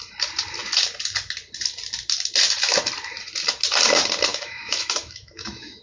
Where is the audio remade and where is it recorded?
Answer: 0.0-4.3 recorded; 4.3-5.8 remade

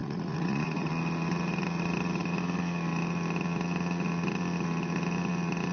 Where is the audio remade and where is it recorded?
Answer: 0.0-0.9 remade; 0.9-5.7 recorded

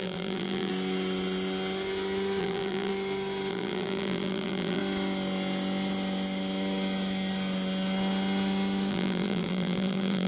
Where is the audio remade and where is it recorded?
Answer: 0.0-0.7 remade; 0.7-2.4 recorded; 2.4-2.9 remade; 2.9-3.5 recorded; 3.5-4.8 remade; 4.8-8.9 recorded; 8.9-10.3 remade

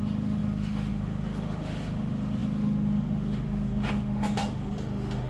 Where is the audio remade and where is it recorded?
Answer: 0.0-5.3 remade

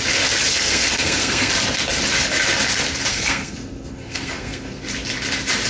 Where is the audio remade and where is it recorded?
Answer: 0.0-0.5 recorded; 0.5-1.5 remade; 1.5-3.1 recorded; 3.1-4.8 remade; 4.8-5.7 recorded